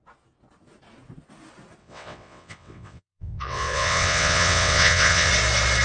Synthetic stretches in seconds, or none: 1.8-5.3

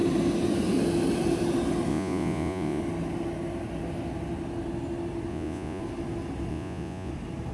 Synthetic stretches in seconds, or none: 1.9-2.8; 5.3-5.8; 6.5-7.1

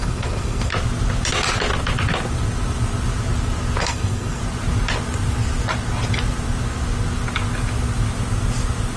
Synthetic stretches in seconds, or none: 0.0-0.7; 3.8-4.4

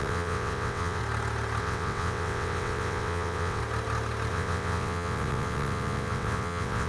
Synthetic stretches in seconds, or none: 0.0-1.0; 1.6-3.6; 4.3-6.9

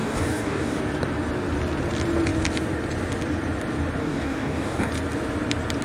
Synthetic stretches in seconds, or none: 0.0-0.8; 4.0-4.9

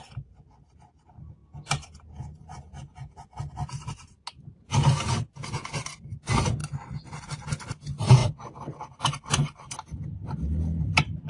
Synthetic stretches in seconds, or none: none

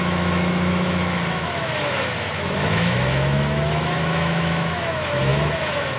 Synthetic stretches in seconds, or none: 0.0-6.0